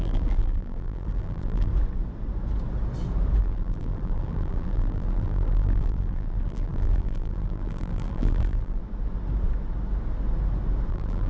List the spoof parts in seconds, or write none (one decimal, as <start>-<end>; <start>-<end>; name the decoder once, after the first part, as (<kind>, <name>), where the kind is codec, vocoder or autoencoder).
0.0-1.7 (vocoder, BigVGAN v2); 3.4-8.8; 10.9-11.3